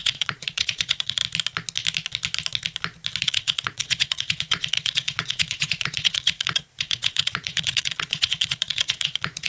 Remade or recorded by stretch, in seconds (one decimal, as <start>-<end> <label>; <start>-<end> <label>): 0.0-1.2 remade; 1.2-3.2 recorded; 3.2-9.5 remade

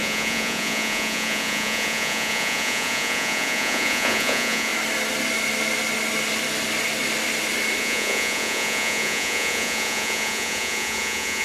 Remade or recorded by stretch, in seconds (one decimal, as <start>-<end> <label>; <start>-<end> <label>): 0.0-4.7 remade; 4.7-7.8 recorded; 7.8-11.4 remade

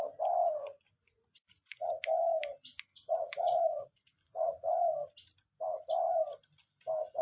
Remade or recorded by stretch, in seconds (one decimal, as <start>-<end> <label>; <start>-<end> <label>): 0.0-0.4 recorded; 0.4-1.9 remade; 1.9-2.9 recorded; 2.9-4.7 remade; 4.7-7.2 recorded

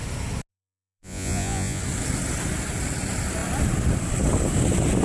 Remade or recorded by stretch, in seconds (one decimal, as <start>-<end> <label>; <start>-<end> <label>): 0.0-0.5 recorded; 0.5-1.8 remade; 1.8-5.0 recorded

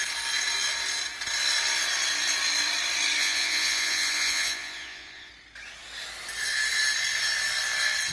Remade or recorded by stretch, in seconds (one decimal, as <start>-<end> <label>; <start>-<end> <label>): 0.0-3.2 recorded; 3.2-5.3 remade; 5.3-8.1 recorded